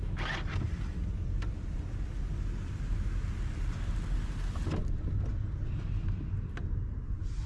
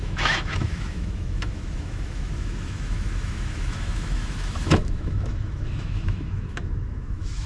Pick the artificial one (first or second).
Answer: second